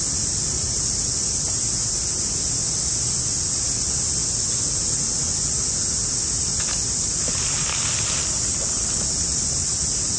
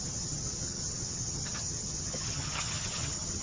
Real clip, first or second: first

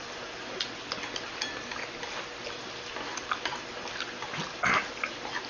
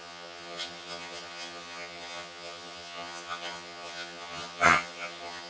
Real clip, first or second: first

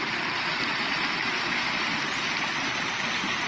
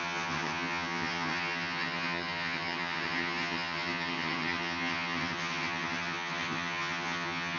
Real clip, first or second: first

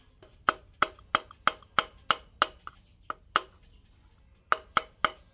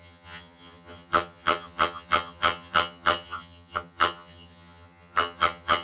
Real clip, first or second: first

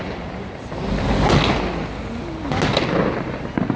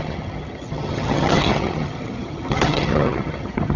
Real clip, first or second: first